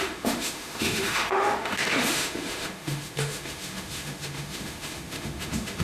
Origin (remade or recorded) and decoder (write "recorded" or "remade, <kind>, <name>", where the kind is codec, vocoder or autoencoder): remade, autoencoder, DAC-VAE